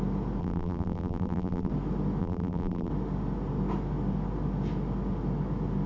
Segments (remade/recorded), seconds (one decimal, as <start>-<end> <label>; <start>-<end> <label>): 0.0-0.4 recorded; 0.4-1.7 remade; 1.7-2.2 recorded; 2.2-2.9 remade; 2.9-5.9 recorded